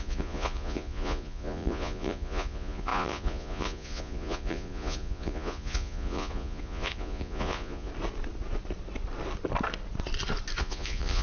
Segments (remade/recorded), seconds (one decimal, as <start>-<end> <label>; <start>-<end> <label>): 0.0-7.9 remade; 7.9-10.6 recorded; 10.6-11.2 remade